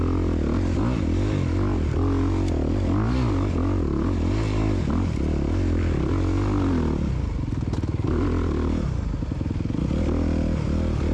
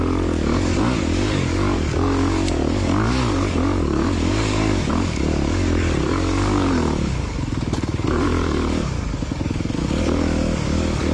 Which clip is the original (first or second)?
first